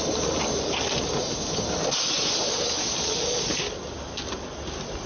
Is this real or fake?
real